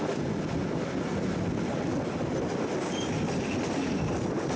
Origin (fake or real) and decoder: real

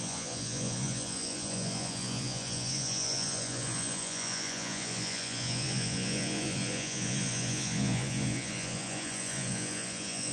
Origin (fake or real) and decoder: fake, vocoder, Vocos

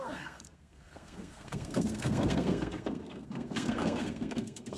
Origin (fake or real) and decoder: fake, codec, SNAC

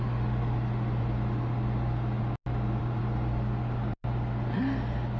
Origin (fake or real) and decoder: real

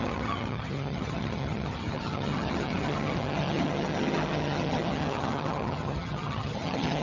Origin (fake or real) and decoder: fake, vocoder, HiFi-GAN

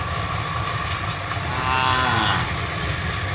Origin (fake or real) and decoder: real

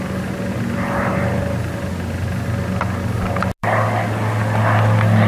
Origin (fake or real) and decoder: real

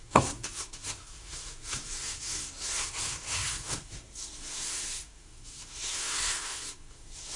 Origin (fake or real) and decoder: fake, codec, SNAC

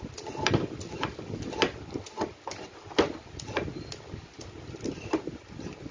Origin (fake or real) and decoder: real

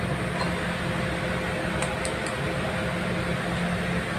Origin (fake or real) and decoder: real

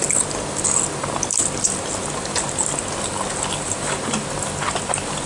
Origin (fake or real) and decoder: real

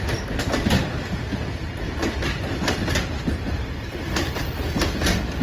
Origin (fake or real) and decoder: real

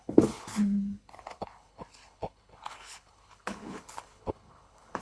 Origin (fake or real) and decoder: fake, codec, HILCodec